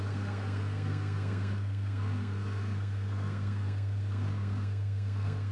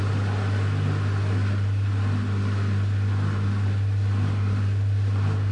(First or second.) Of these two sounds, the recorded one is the second